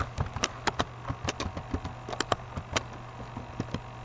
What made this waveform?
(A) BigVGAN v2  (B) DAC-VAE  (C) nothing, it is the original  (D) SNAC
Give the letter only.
C